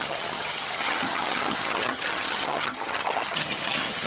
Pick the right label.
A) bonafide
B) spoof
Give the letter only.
B